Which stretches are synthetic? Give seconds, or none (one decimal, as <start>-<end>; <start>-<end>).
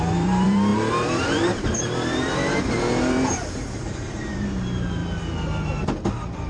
0.0-5.0